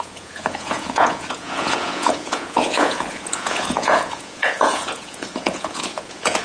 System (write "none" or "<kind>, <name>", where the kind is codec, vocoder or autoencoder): vocoder, Vocos